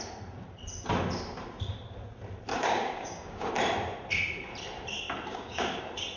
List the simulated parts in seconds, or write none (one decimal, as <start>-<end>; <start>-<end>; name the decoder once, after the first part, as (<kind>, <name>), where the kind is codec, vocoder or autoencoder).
2.5-3.5 (codec, DAC); 5.3-5.8